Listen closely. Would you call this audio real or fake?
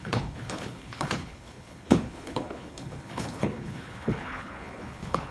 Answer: fake